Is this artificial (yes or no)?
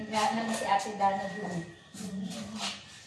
no